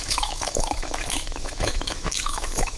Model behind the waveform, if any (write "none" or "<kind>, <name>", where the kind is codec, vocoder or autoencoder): autoencoder, DAC-VAE